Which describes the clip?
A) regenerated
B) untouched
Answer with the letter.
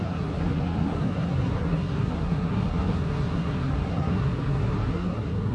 A